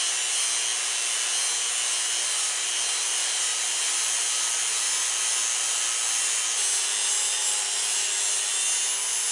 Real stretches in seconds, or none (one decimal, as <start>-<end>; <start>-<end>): 0.0-9.3